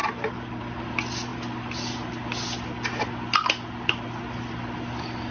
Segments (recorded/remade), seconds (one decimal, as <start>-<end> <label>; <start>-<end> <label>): 0.0-5.3 recorded